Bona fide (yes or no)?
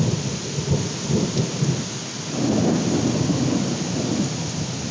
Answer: yes